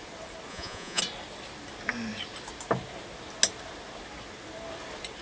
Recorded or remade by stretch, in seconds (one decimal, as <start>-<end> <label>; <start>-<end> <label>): 0.0-0.5 recorded; 0.5-1.0 remade; 1.0-5.2 recorded